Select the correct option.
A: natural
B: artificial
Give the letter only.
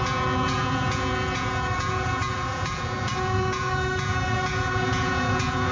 B